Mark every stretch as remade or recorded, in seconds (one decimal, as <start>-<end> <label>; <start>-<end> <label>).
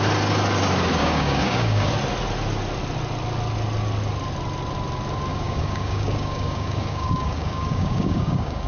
0.0-1.0 recorded; 1.0-1.9 remade; 1.9-5.3 recorded; 5.3-8.7 remade